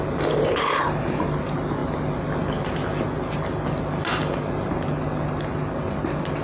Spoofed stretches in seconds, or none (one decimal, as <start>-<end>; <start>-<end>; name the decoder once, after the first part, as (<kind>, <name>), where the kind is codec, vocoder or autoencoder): none